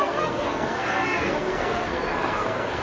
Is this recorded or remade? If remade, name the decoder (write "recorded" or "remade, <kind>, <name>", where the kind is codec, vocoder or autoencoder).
remade, codec, SNAC